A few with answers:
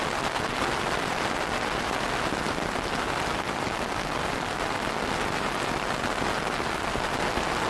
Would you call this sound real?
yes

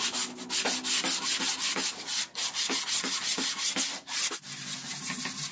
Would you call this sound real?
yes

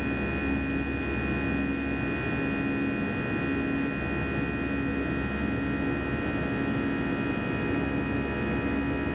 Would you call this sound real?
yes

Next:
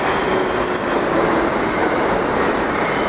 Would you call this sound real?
yes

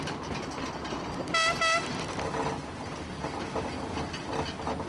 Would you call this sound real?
yes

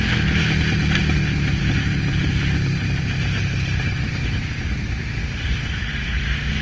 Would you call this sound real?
yes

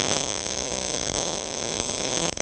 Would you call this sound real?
no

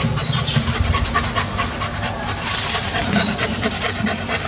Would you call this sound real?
no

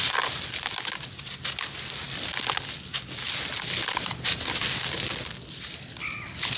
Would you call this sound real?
yes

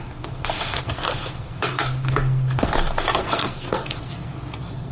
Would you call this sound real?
no